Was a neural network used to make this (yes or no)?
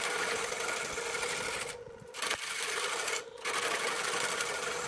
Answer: no